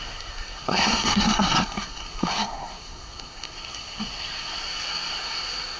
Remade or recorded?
remade